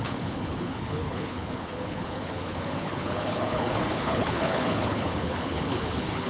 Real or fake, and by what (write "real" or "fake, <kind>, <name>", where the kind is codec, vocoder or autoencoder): fake, codec, HILCodec